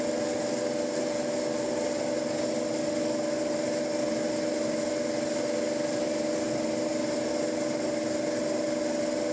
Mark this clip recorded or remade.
recorded